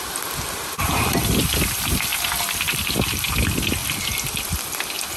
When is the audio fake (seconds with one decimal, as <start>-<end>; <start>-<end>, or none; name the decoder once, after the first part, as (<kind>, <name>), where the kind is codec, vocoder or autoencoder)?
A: none